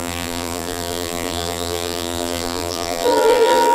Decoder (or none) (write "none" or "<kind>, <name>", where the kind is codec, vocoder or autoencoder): vocoder, BigVGAN v2